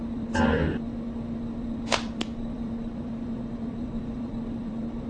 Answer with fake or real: fake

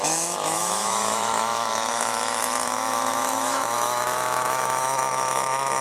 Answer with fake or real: fake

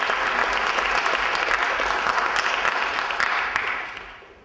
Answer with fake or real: real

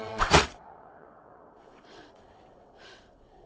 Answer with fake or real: fake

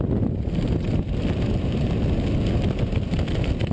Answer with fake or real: real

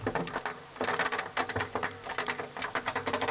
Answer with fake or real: real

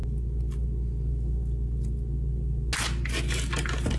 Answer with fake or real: real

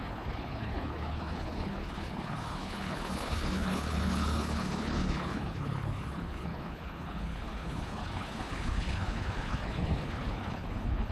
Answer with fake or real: fake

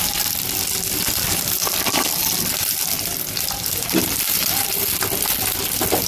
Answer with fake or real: real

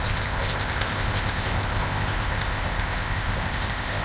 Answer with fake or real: fake